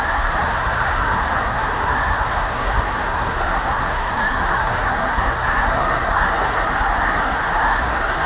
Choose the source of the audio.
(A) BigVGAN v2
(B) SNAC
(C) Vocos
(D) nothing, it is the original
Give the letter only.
B